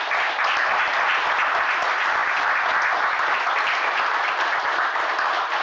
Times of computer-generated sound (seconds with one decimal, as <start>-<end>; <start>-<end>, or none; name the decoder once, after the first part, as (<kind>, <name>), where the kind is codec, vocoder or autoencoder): none

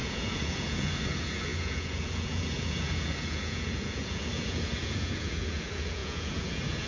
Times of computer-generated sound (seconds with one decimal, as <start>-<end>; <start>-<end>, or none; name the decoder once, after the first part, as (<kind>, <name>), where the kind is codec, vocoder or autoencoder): 0.0-6.9 (vocoder, Vocos)

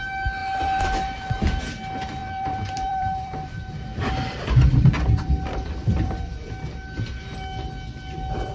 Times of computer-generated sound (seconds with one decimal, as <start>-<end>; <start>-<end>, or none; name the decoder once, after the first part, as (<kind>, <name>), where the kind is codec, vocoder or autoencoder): 0.4-1.6 (vocoder, BigVGAN v2); 2.2-6.5

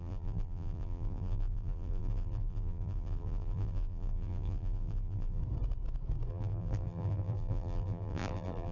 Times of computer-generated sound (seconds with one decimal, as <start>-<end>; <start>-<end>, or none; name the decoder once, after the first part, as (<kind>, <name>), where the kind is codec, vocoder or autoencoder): 0.0-5.4 (vocoder, BigVGAN v2); 6.3-8.7

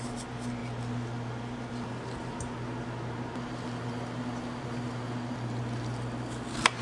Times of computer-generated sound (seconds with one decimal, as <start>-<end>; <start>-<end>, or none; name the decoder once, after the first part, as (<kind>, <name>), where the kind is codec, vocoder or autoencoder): none

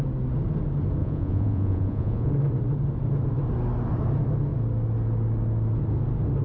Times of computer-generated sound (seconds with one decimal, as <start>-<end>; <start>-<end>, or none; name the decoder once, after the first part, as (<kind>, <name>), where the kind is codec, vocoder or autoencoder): 1.0-2.3 (vocoder, Vocos)